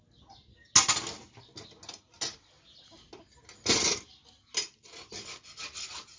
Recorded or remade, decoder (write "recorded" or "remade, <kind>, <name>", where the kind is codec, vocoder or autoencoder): recorded